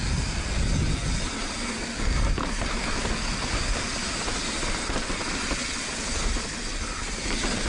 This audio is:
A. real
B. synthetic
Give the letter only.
A